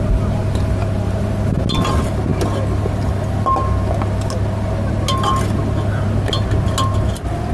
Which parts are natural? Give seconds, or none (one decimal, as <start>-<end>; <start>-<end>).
0.0-7.5